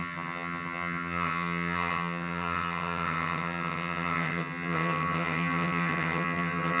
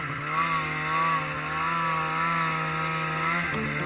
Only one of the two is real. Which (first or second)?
second